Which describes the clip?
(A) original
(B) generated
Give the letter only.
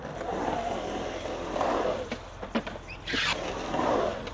A